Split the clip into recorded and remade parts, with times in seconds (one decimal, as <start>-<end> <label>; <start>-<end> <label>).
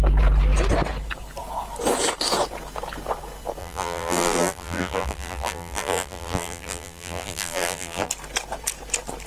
0.0-3.6 recorded; 3.6-8.1 remade; 8.1-9.3 recorded